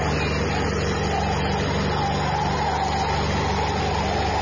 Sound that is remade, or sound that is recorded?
recorded